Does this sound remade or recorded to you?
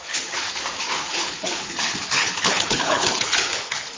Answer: remade